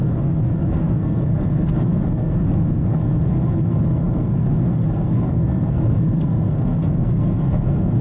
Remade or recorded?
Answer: remade